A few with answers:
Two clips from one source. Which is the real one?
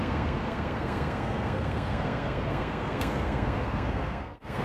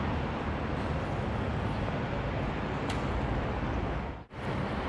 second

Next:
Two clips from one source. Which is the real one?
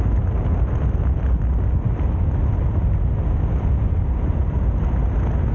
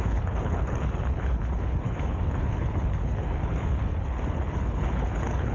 first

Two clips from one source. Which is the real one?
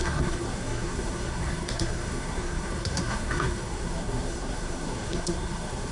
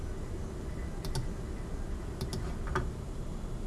second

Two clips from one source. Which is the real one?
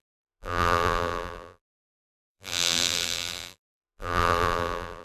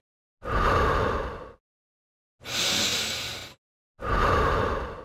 second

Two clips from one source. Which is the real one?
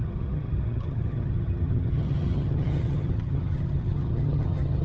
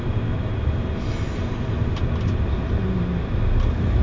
second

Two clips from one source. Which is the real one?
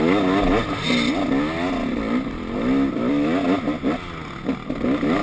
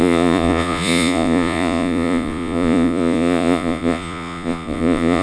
first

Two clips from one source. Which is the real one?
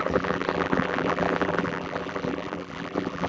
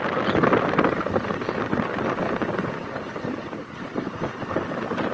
second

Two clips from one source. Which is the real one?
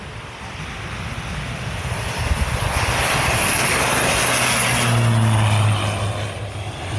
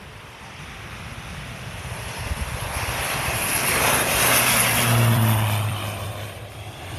first